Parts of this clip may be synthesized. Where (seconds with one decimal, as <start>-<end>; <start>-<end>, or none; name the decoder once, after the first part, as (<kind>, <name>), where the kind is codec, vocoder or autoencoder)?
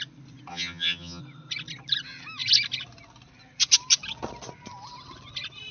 0.5-1.2 (vocoder, HiFi-GAN)